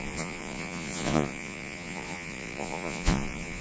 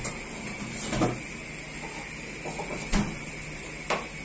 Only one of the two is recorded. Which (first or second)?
second